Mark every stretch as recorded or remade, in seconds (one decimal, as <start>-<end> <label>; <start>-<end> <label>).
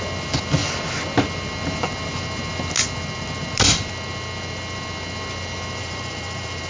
0.0-5.8 recorded; 5.8-6.7 remade